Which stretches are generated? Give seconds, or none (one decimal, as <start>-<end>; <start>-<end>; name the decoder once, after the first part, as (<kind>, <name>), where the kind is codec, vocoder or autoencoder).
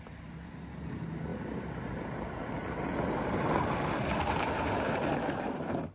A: none